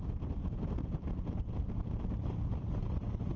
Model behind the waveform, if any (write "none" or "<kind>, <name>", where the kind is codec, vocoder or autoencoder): none